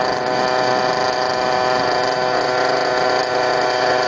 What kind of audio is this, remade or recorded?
recorded